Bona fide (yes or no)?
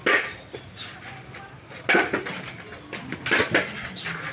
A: yes